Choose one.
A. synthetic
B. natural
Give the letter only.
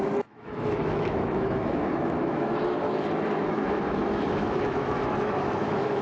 A